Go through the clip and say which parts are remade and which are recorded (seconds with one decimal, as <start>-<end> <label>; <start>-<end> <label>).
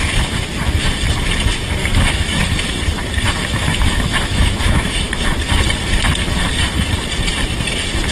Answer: 0.0-1.8 recorded; 1.8-2.4 remade; 2.4-3.4 recorded; 3.4-5.1 remade; 5.1-8.1 recorded